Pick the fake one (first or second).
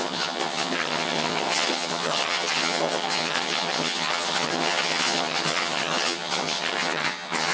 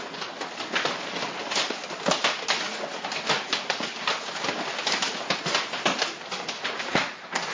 first